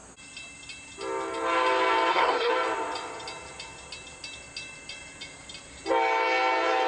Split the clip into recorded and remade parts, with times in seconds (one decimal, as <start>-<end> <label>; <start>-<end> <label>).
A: 0.0-2.1 recorded; 2.1-2.5 remade; 2.5-6.9 recorded